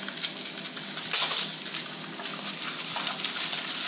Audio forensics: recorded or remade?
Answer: recorded